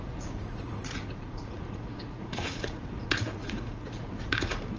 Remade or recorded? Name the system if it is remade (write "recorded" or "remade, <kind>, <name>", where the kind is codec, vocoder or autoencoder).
remade, vocoder, Vocos